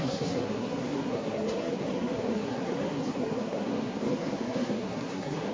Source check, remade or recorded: remade